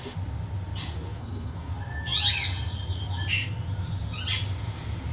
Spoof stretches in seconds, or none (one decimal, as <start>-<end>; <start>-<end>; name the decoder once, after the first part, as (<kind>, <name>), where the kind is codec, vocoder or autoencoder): 1.1-1.7 (autoencoder, DAC-VAE)